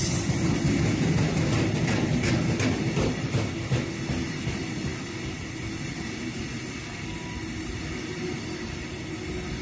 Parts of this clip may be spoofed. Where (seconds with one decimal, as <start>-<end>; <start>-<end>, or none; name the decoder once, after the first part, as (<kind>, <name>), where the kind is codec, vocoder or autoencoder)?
none